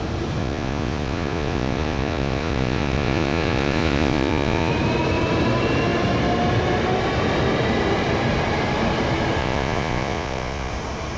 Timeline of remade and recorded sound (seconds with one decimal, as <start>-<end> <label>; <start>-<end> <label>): 0.0-0.4 recorded; 0.4-4.7 remade; 4.7-9.4 recorded; 9.4-10.7 remade; 10.7-11.2 recorded